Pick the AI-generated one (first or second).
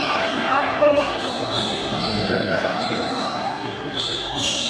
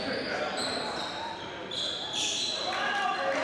first